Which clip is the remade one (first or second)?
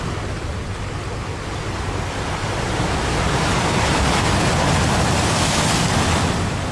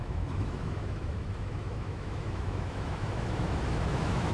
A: second